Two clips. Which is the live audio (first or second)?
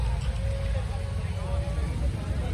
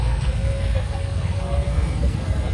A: first